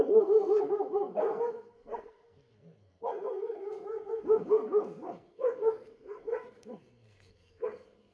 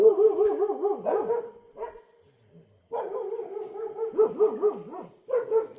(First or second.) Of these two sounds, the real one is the second